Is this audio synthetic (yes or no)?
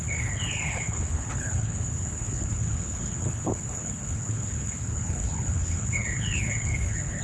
yes